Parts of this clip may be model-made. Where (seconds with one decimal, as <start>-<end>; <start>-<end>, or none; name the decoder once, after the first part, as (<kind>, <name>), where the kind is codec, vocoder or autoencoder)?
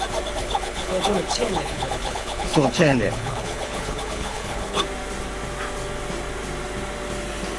0.4-4.8 (codec, HILCodec)